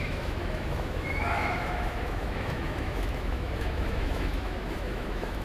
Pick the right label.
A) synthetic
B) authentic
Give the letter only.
A